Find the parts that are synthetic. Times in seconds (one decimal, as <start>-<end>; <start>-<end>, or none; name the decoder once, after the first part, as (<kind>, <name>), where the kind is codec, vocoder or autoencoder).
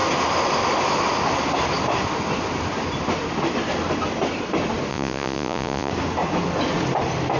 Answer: 4.9-5.9 (vocoder, Vocos)